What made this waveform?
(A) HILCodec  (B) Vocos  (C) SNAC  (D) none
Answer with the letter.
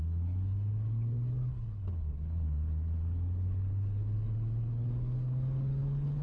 A